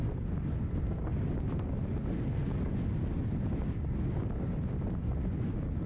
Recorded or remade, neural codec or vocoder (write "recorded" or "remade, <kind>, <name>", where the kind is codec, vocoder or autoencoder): recorded